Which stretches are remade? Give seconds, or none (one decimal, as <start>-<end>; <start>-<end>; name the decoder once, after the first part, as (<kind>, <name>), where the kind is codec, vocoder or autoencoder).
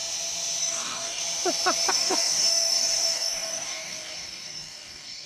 0.6-1.2 (codec, DAC); 1.9-5.3